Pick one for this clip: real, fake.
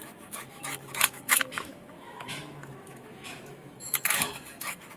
fake